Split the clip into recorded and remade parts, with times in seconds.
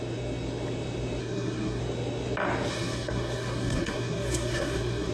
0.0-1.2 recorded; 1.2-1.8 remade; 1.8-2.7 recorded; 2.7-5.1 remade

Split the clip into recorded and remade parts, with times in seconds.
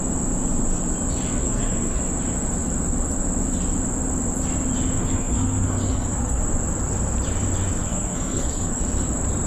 0.0-1.4 recorded; 1.4-2.0 remade; 2.0-5.0 recorded; 5.0-6.4 remade; 6.4-7.8 recorded; 7.8-8.8 remade; 8.8-9.5 recorded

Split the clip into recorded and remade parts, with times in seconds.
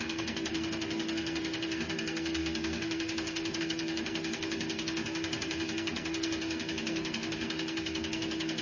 0.0-8.6 remade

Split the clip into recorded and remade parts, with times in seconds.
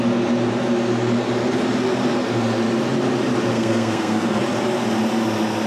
0.0-3.5 recorded; 3.5-4.4 remade; 4.4-5.7 recorded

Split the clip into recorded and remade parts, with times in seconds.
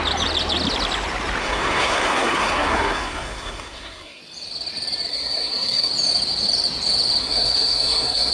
0.0-1.4 recorded; 1.4-4.2 remade; 4.2-5.1 recorded; 5.1-5.9 remade; 5.9-7.2 recorded; 7.2-8.3 remade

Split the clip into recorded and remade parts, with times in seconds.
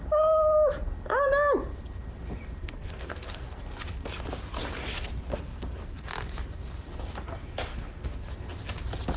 0.0-2.6 recorded; 2.6-3.6 remade; 3.6-5.3 recorded; 5.3-6.0 remade; 6.0-7.7 recorded; 7.7-8.3 remade; 8.3-9.2 recorded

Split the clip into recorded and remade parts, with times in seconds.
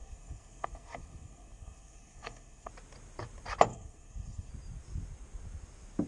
0.0-2.7 remade; 2.7-3.7 recorded; 3.7-4.5 remade; 4.5-6.1 recorded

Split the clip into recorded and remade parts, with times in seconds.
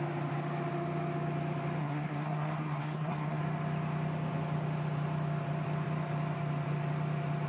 0.0-1.8 recorded; 1.8-3.4 remade; 3.4-7.5 recorded